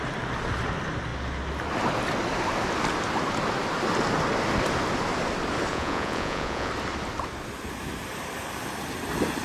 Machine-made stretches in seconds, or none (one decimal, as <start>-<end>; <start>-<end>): 5.7-6.7